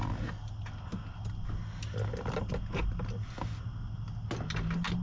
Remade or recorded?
recorded